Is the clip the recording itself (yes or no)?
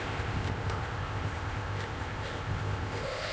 no